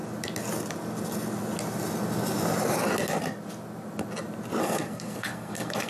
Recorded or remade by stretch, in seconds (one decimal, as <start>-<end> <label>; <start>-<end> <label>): 0.0-4.6 recorded; 4.6-5.9 remade